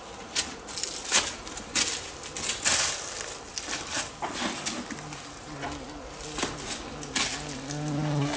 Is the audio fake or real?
real